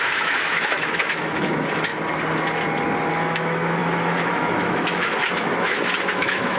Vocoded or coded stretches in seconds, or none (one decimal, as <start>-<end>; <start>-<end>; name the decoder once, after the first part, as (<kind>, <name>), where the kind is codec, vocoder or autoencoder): 0.0-1.9 (autoencoder, DAC-VAE); 3.1-6.6